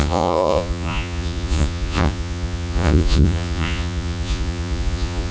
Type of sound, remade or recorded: remade